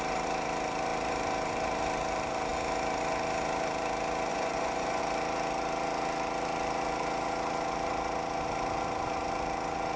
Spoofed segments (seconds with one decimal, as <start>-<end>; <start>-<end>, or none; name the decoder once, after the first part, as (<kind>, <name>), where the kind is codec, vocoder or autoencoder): 4.3-5.0 (vocoder, Vocos)